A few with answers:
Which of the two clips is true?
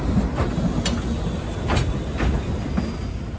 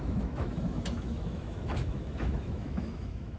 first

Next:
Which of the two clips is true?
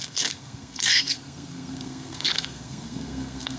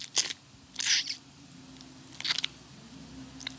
second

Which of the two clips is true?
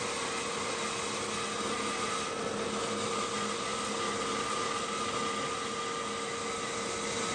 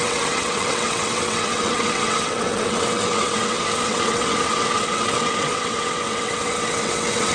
first